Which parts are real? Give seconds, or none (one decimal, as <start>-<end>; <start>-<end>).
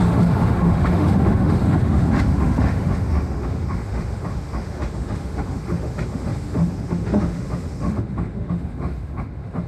none